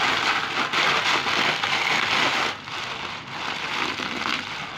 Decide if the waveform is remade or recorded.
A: recorded